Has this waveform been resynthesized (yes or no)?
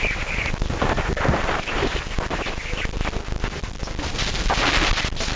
no